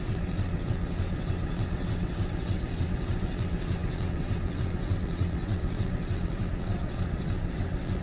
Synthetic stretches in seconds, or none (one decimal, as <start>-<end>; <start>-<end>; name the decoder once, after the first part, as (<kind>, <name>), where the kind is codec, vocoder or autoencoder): 0.0-8.0 (vocoder, WaveNeXt)